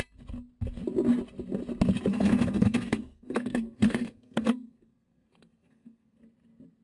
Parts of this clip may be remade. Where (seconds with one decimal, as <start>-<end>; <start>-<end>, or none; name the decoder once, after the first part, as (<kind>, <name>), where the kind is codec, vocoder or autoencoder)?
2.1-6.2 (codec, SNAC)